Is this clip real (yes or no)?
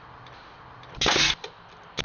yes